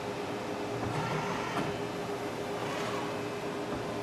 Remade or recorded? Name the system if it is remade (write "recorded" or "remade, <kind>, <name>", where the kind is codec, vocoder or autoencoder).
recorded